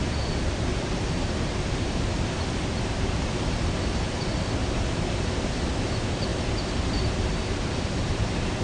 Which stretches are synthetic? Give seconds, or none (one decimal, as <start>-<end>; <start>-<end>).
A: 0.7-2.1